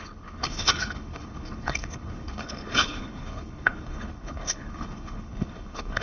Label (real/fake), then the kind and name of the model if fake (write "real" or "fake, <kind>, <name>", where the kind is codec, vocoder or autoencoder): fake, codec, HILCodec